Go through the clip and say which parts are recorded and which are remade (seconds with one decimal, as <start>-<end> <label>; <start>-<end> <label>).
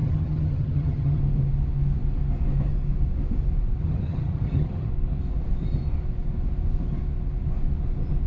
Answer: 0.0-1.2 remade; 1.2-3.8 recorded; 3.8-4.9 remade; 4.9-8.3 recorded